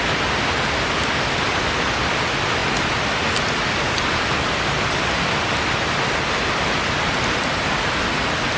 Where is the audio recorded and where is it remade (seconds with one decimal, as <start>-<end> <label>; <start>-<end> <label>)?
0.0-8.6 recorded